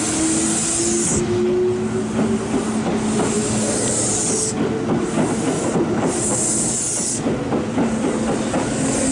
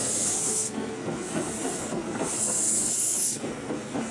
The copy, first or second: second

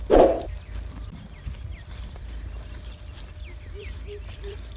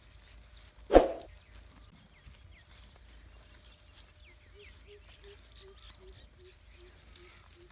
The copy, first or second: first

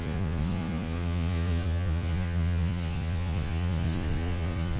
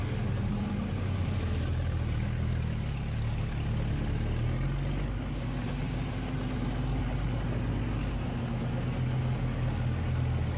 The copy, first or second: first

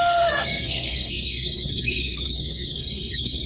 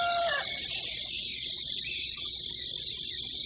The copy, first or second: first